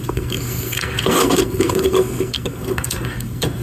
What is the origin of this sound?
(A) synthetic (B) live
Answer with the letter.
A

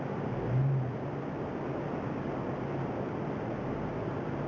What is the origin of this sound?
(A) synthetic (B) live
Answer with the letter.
B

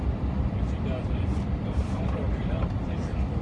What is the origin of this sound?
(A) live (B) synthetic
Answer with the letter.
B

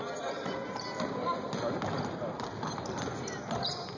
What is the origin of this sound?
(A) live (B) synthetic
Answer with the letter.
A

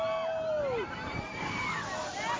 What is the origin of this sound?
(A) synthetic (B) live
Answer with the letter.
B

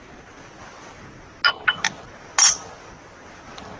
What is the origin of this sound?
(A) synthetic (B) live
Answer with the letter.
B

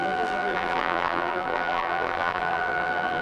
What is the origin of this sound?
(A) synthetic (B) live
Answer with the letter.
A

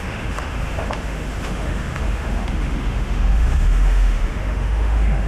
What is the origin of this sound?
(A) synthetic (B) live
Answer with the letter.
A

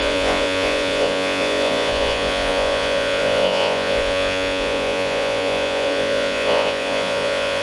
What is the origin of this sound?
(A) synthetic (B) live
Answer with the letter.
A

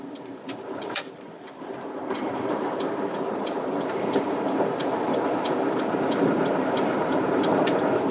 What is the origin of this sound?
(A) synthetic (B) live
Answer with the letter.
A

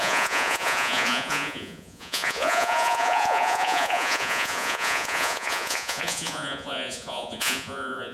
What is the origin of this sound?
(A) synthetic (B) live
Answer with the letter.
A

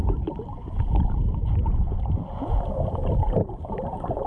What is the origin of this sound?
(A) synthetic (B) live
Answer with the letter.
B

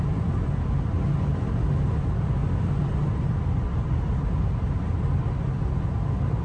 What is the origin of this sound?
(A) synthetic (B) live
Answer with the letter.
B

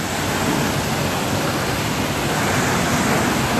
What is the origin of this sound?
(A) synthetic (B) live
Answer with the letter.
B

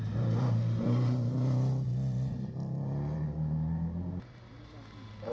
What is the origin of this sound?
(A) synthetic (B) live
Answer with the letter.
B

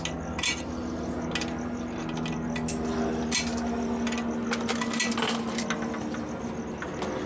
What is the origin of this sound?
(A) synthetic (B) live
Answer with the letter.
B